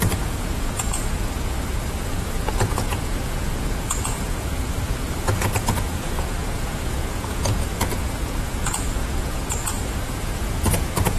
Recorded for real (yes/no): no